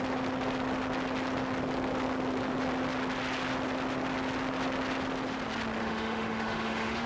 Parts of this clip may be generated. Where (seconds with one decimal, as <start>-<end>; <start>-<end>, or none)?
5.8-7.1